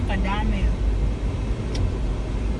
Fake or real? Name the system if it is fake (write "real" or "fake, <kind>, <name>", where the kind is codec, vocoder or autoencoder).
real